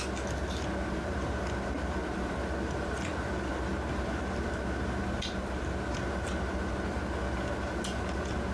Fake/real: real